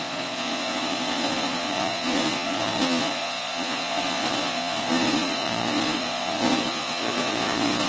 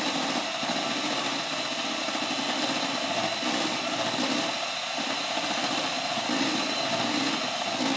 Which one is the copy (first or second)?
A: first